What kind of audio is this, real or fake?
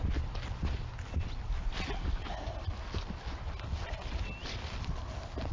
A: real